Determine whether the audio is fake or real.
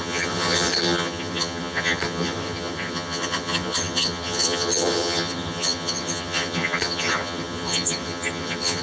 fake